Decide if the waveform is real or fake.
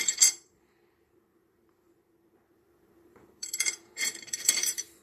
fake